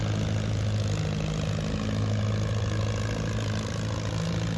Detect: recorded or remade recorded